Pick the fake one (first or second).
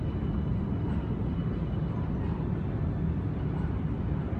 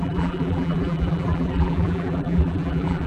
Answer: second